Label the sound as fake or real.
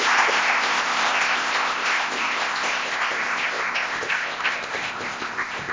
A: fake